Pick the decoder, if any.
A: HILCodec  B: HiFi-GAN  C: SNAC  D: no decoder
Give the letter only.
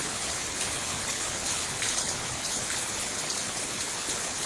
A